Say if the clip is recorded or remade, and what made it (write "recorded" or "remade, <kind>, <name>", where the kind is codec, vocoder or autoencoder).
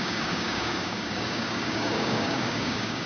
remade, codec, DAC